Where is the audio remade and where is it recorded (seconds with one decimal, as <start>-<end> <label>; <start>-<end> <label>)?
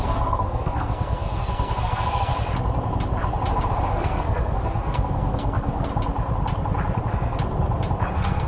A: 0.0-2.3 remade; 2.3-3.9 recorded; 3.9-5.9 remade; 5.9-8.1 recorded; 8.1-8.5 remade